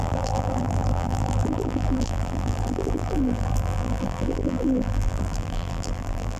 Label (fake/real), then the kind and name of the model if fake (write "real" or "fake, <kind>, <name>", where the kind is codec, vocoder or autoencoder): fake, vocoder, BigVGAN v2